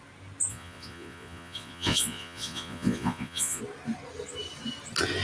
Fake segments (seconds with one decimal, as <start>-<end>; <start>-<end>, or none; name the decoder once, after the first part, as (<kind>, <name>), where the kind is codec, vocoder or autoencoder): 0.5-3.6 (vocoder, Vocos)